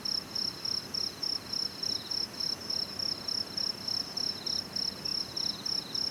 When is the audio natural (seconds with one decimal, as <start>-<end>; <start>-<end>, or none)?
0.0-6.1